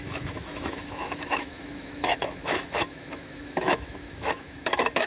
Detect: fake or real fake